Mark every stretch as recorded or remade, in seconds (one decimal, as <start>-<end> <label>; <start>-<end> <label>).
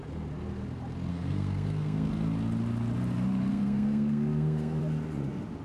0.0-1.1 recorded; 1.1-2.1 remade; 2.1-3.5 recorded; 3.5-4.8 remade; 4.8-5.6 recorded